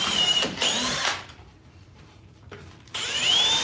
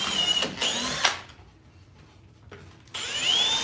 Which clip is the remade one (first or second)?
first